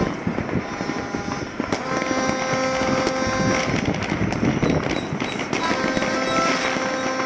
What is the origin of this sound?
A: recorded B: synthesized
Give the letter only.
A